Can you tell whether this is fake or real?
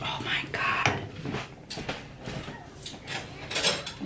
real